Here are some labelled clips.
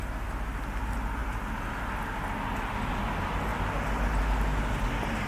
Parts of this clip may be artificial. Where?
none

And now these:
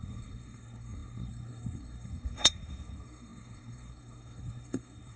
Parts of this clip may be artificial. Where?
0.0-5.2 (codec, SNAC)

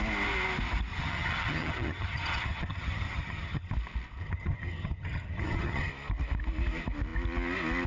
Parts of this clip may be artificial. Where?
0.9-3.7 (vocoder, HiFi-GAN); 4.2-5.9

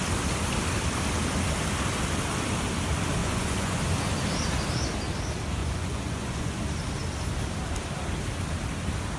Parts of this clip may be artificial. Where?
3.2-3.8 (vocoder, Vocos); 5.6-6.6